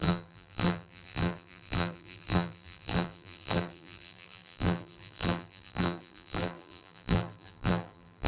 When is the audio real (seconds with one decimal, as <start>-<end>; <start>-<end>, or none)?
none